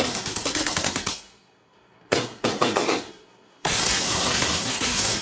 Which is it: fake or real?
fake